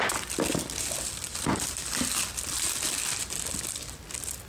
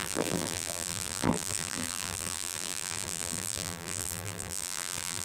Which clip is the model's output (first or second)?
second